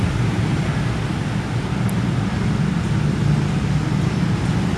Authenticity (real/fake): real